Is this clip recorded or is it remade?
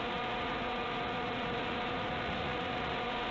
remade